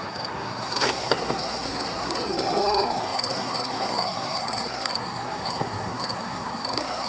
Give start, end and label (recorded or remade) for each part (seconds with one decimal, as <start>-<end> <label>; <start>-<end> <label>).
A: 0.0-7.1 remade